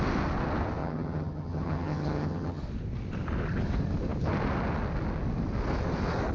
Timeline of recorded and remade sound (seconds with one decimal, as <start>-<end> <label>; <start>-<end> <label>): 0.0-0.8 recorded; 0.8-2.6 remade; 2.6-6.3 recorded